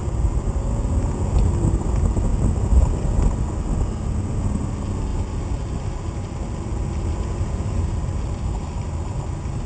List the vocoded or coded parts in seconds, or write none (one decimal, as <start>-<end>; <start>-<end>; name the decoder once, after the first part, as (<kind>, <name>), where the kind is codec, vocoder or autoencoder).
none